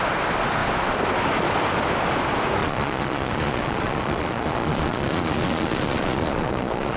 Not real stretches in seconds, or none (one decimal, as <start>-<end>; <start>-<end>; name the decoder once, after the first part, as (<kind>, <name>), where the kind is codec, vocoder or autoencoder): 2.6-7.0 (vocoder, Vocos)